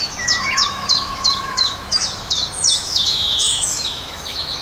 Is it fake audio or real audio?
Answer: fake